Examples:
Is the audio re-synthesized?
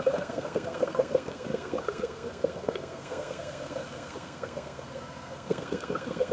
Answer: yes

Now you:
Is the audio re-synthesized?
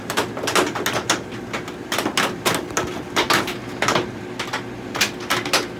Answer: no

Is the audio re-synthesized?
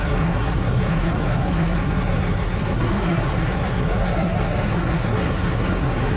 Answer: yes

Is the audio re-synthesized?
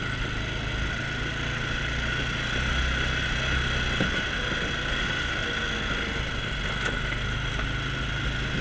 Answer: no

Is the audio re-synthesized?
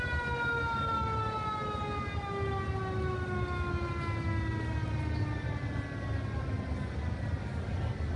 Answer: no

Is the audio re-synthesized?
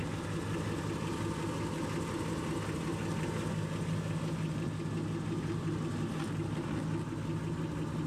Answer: no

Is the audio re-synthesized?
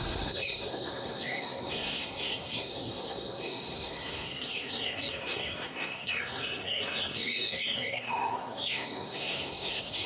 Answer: yes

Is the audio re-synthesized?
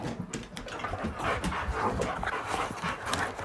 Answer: no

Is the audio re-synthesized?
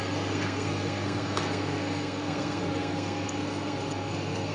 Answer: yes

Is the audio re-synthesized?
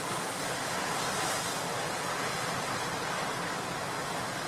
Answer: no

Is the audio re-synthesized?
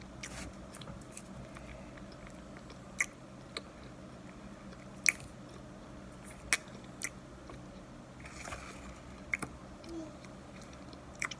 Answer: no